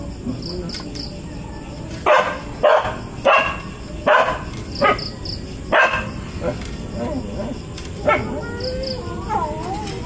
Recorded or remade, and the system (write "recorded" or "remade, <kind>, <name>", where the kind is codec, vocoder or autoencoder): recorded